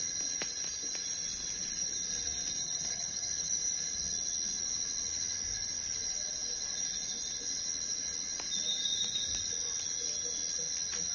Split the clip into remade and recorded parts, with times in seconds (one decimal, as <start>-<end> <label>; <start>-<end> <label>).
0.0-2.6 recorded; 2.6-3.5 remade; 3.5-11.1 recorded